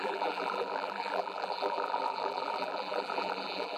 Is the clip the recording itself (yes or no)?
no